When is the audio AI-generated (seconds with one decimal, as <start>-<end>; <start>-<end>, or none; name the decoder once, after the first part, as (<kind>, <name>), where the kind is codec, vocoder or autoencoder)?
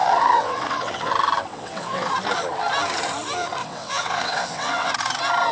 0.0-1.1 (vocoder, WaveNeXt); 1.5-2.1; 3.6-4.9